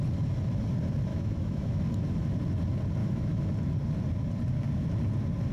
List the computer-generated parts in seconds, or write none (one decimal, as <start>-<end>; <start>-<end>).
1.1-1.8; 3.0-3.5